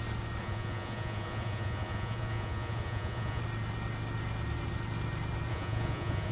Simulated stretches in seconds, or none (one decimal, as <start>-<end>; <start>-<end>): 0.4-3.4; 5.5-6.3